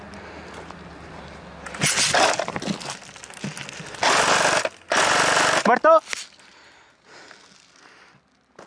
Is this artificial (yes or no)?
no